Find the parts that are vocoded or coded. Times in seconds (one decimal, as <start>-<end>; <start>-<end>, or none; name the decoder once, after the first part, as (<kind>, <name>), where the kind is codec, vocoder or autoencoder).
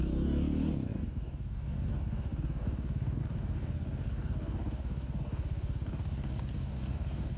0.0-7.4 (codec, DAC)